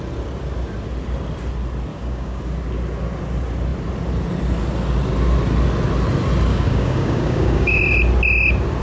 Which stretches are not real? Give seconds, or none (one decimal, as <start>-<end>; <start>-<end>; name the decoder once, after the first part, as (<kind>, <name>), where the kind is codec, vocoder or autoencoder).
1.9-2.4 (codec, DAC); 6.5-7.8